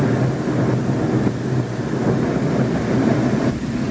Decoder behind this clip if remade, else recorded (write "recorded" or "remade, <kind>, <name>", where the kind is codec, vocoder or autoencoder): recorded